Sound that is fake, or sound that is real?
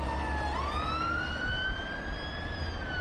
real